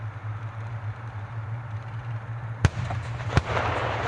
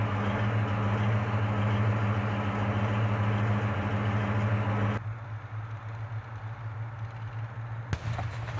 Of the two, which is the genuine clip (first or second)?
second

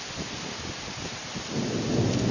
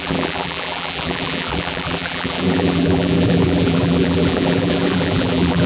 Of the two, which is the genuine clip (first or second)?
first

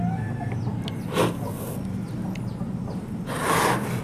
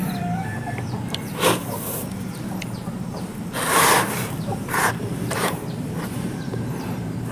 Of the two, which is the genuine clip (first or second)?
first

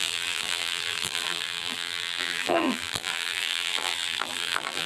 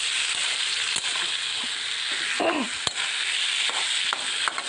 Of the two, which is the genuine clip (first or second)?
second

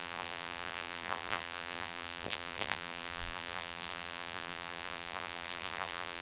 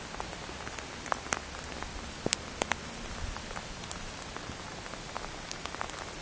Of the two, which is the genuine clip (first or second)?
second